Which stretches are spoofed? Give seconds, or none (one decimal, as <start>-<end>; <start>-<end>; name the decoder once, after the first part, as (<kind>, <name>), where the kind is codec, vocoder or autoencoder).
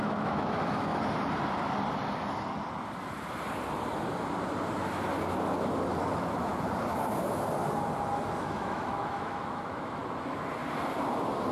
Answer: 0.0-0.9 (autoencoder, DAC-VAE); 6.1-6.5; 8.4-10.0